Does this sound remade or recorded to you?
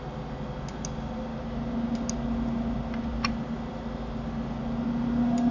recorded